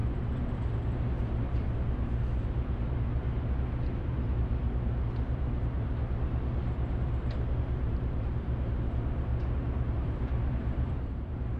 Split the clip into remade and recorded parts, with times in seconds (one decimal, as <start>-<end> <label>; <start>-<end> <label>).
0.0-6.0 remade; 6.0-7.6 recorded; 7.6-9.3 remade; 9.3-9.9 recorded; 9.9-11.6 remade